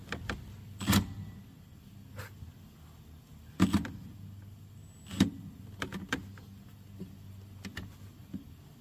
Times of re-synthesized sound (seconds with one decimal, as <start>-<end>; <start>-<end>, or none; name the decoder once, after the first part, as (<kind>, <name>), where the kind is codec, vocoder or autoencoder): none